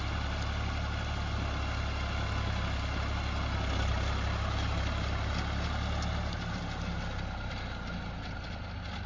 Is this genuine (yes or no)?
yes